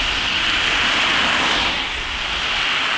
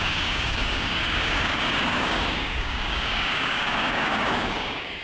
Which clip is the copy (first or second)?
second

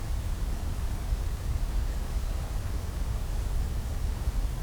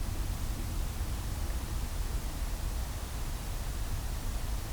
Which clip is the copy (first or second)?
first